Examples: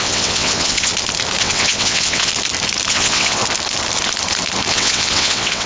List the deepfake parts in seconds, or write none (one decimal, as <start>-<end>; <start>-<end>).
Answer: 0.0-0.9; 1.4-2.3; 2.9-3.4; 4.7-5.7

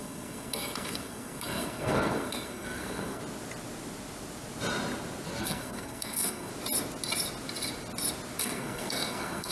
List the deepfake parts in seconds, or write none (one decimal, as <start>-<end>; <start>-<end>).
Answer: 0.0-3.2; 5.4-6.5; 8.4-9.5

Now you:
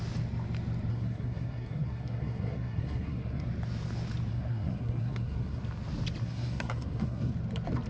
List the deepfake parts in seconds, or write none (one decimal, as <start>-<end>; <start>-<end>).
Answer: 0.9-3.5; 4.3-5.6; 6.2-7.3

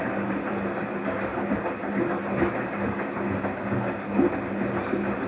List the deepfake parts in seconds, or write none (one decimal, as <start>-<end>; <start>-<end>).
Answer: none

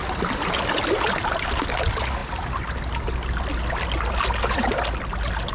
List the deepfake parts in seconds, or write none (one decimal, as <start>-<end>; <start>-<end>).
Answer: none

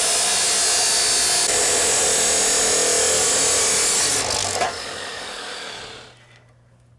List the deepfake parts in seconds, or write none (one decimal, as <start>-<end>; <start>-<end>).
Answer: 4.4-5.8

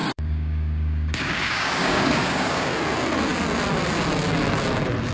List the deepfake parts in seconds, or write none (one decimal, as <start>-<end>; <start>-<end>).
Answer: 0.0-2.7